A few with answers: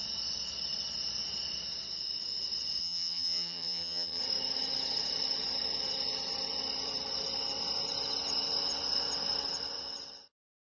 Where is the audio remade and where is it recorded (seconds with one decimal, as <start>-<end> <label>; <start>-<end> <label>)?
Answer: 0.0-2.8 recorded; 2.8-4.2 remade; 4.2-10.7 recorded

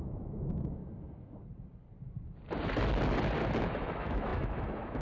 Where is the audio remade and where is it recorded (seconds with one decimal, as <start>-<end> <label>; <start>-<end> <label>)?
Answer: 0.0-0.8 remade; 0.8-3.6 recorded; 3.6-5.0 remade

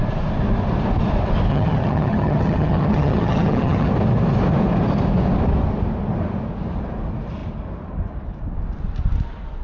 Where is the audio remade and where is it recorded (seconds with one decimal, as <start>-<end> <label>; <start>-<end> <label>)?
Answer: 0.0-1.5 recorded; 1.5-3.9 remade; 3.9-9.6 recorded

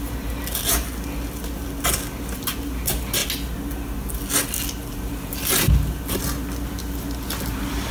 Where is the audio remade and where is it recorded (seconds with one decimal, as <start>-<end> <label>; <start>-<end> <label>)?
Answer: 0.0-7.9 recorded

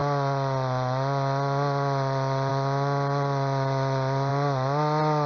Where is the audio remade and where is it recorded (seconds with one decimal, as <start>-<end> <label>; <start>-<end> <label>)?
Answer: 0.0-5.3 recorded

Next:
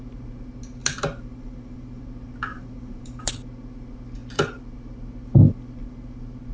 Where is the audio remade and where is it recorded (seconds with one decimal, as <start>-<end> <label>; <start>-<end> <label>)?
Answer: 0.0-0.8 recorded; 0.8-2.0 remade; 2.0-2.5 recorded; 2.5-3.3 remade; 3.3-6.5 recorded

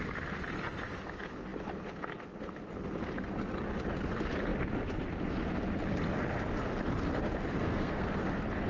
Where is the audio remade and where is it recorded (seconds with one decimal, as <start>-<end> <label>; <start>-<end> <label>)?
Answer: 0.0-7.6 recorded; 7.6-8.2 remade; 8.2-8.7 recorded

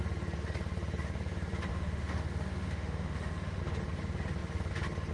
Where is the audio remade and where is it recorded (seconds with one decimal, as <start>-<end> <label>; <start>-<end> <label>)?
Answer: 0.0-1.7 recorded; 1.7-3.6 remade; 3.6-5.1 recorded